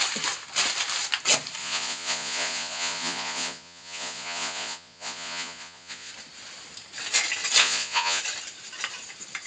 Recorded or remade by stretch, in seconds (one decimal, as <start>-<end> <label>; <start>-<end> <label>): 0.0-1.6 recorded; 1.6-6.1 remade; 6.1-7.6 recorded; 7.6-8.2 remade; 8.2-9.5 recorded